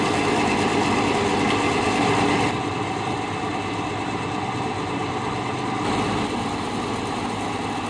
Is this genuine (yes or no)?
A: yes